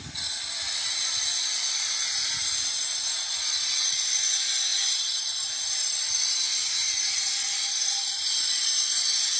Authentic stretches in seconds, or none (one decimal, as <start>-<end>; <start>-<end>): 0.0-9.4